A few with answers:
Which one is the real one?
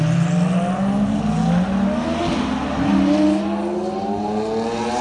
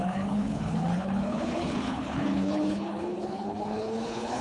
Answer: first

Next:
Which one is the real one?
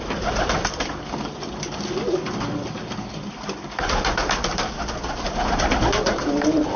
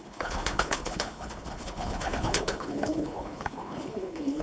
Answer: first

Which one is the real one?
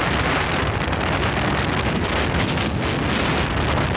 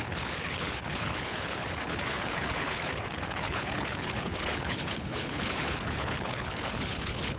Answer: first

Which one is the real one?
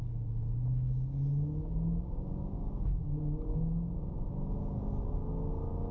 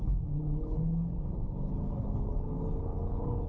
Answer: first